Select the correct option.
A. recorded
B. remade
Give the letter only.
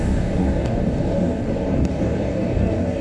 B